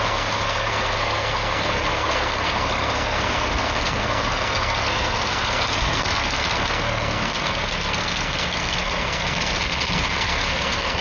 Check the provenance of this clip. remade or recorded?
remade